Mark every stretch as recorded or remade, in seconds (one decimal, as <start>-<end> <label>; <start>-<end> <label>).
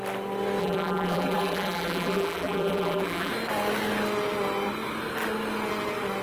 0.0-0.6 recorded; 0.6-3.3 remade; 3.3-6.2 recorded